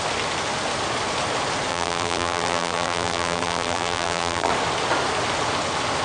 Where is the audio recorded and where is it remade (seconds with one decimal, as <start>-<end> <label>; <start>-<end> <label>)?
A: 0.0-1.7 recorded; 1.7-4.5 remade; 4.5-6.0 recorded